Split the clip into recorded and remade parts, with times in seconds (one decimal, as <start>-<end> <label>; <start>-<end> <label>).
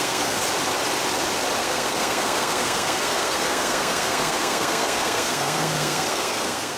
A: 0.0-0.4 remade; 0.4-1.6 recorded; 1.6-6.8 remade